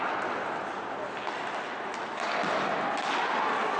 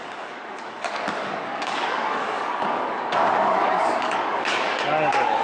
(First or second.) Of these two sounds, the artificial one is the second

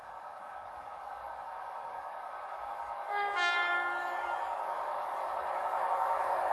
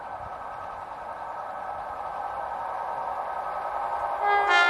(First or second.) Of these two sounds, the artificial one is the first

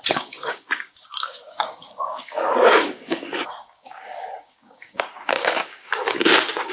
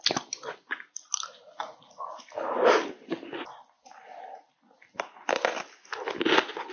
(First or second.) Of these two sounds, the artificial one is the first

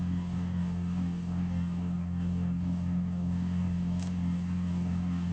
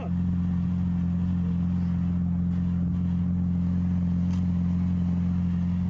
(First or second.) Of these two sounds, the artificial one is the first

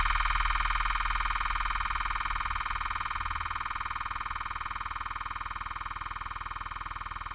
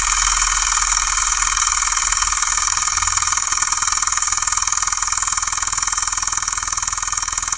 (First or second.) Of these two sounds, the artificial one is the second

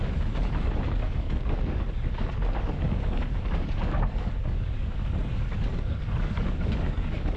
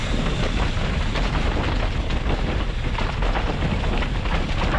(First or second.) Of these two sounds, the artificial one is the first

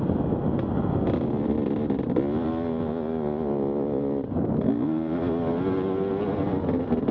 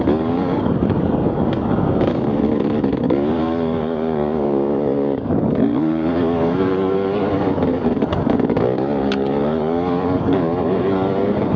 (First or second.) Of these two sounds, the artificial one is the second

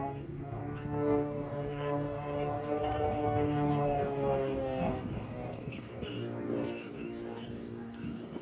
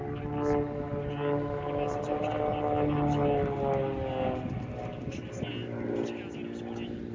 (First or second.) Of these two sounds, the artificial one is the first